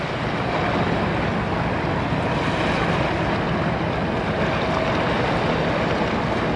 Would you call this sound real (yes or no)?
yes